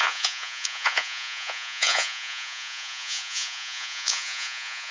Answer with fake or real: fake